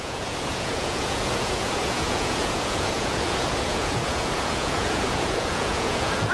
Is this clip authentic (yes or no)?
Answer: no